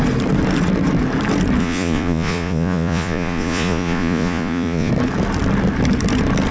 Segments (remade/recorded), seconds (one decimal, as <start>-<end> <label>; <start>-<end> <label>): 0.0-1.6 recorded; 1.6-4.9 remade; 4.9-6.5 recorded

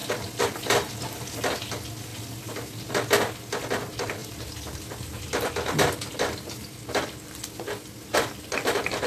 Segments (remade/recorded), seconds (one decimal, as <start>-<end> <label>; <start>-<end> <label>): 0.0-0.9 remade; 0.9-2.1 recorded; 2.1-2.9 remade; 2.9-4.2 recorded; 4.2-6.0 remade; 6.0-9.1 recorded

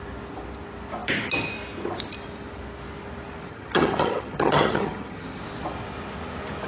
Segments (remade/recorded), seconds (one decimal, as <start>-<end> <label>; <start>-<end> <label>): 0.0-3.5 recorded; 3.5-5.4 remade; 5.4-6.7 recorded

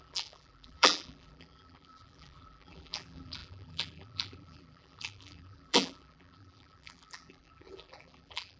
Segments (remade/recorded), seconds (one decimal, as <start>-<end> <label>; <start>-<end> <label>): 0.0-8.6 remade

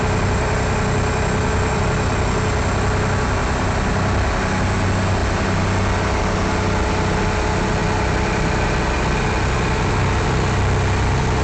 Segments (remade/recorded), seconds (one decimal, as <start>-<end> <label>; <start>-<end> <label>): 0.0-11.4 recorded

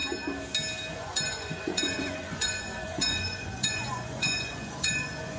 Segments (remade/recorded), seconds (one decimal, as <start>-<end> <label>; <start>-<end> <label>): 0.0-0.9 recorded; 0.9-5.4 remade

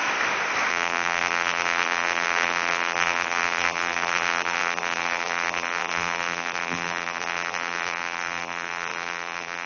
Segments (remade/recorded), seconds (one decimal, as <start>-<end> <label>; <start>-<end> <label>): 0.0-0.7 recorded; 0.7-9.7 remade

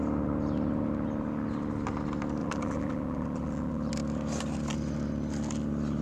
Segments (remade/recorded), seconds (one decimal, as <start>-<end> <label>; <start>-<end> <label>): 0.0-2.4 recorded; 2.4-3.9 remade; 3.9-6.0 recorded